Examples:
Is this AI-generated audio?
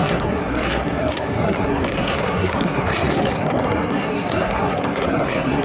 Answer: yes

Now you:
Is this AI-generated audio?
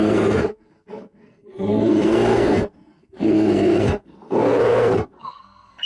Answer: yes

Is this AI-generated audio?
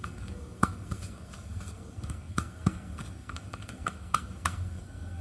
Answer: yes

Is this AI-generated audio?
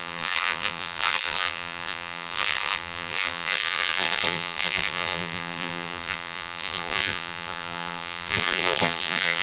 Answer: yes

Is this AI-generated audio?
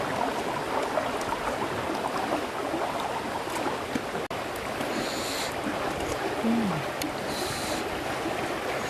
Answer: no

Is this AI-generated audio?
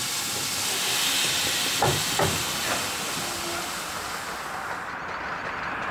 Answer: no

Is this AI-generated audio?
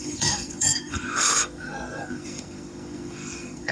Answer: yes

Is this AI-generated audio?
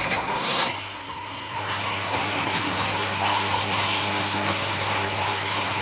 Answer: yes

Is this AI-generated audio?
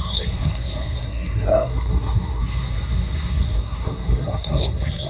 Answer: yes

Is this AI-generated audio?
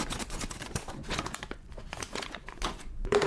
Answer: yes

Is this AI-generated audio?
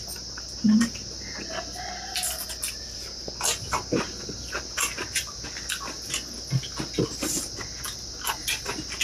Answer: no